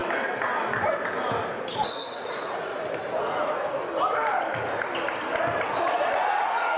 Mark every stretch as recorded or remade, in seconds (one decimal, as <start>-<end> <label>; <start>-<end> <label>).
0.0-1.5 recorded; 1.5-2.7 remade; 2.7-3.2 recorded; 3.2-3.8 remade; 3.8-5.6 recorded; 5.6-6.8 remade